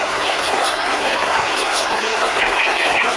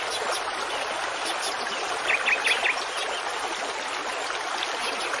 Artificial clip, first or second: first